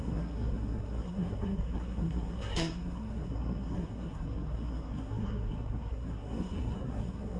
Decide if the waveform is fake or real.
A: fake